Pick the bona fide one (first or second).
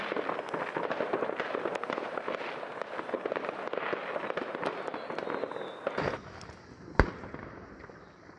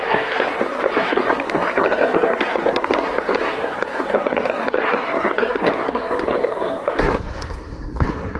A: first